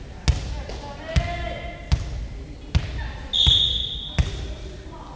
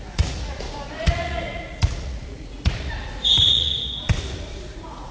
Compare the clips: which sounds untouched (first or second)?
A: first